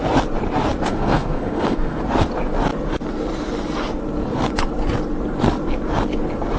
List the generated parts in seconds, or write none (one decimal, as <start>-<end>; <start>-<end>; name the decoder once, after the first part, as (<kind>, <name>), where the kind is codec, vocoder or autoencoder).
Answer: 0.9-2.0 (codec, SNAC)